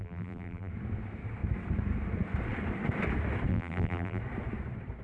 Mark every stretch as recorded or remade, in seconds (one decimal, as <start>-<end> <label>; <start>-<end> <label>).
0.0-0.7 remade; 0.7-3.5 recorded; 3.5-4.2 remade; 4.2-5.0 recorded